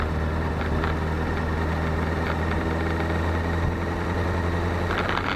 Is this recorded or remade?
recorded